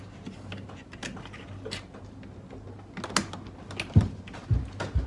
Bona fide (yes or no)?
yes